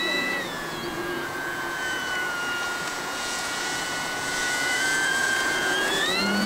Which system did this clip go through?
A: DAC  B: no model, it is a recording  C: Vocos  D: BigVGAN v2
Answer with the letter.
C